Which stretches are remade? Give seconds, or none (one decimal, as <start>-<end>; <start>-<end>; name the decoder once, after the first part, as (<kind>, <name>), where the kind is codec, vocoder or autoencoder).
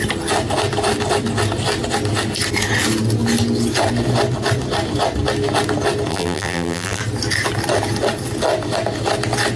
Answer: 6.1-7.0 (vocoder, BigVGAN v2)